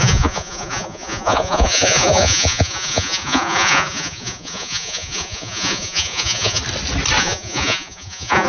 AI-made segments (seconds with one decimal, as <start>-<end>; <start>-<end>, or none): 0.0-6.6; 7.2-8.5